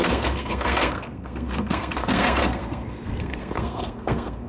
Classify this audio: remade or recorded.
remade